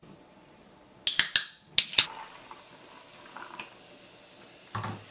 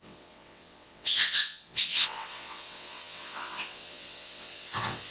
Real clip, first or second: first